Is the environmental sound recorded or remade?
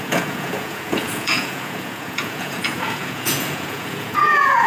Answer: remade